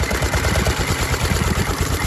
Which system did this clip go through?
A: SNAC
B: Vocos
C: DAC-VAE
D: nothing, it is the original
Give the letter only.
D